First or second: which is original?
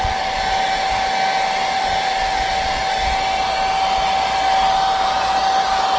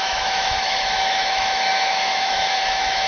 first